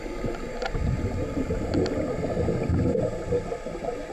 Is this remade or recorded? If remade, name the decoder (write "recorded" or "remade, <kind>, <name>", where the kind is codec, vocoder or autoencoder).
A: recorded